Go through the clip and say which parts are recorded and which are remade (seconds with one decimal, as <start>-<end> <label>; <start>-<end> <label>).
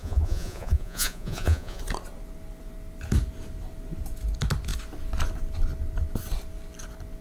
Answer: 0.0-1.8 remade; 1.8-7.2 recorded